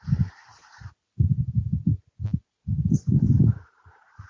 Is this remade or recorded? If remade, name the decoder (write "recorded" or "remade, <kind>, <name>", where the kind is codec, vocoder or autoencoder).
recorded